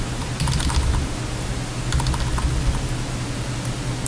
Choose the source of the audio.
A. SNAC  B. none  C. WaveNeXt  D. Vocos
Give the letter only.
B